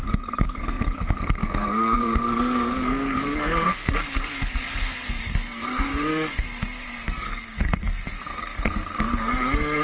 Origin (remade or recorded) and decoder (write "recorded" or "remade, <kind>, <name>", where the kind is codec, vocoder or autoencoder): remade, codec, SNAC